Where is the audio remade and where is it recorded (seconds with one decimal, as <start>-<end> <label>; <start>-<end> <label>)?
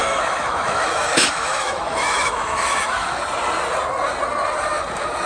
0.0-3.2 remade; 3.2-5.3 recorded